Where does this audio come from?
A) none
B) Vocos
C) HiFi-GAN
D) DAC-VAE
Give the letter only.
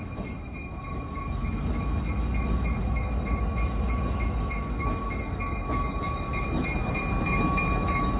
D